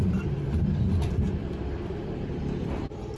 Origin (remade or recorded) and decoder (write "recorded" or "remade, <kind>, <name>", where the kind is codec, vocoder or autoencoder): remade, vocoder, BigVGAN v2